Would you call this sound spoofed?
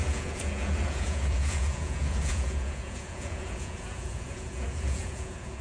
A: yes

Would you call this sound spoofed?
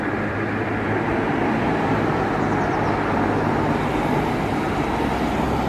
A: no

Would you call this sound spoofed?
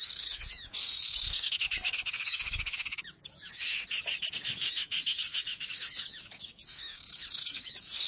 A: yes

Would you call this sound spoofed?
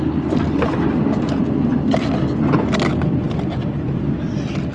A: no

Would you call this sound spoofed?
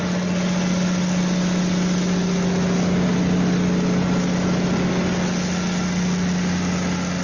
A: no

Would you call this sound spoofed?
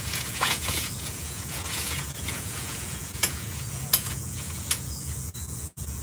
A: yes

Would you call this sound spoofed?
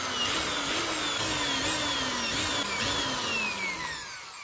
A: no